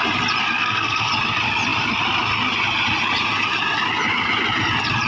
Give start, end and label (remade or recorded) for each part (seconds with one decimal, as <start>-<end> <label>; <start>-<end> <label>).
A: 0.0-0.4 recorded; 0.4-1.1 remade; 1.1-5.1 recorded